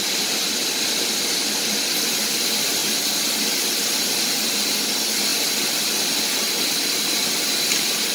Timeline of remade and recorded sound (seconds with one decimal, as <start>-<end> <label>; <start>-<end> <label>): 0.0-2.8 remade; 2.8-3.5 recorded; 3.5-8.1 remade